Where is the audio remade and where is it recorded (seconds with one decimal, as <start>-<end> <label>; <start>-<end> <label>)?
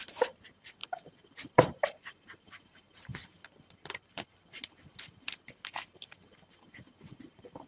0.0-0.8 remade; 0.8-1.5 recorded; 1.5-3.2 remade; 3.2-6.8 recorded; 6.8-7.7 remade